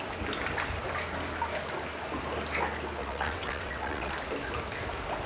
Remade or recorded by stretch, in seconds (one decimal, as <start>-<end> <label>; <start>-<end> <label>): 0.0-3.0 recorded; 3.0-4.1 remade; 4.1-5.3 recorded